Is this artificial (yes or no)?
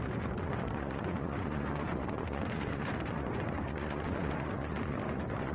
yes